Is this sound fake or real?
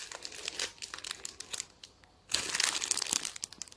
real